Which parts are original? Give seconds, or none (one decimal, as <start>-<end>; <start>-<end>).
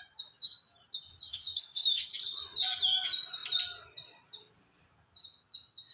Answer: 0.0-1.3; 2.1-5.9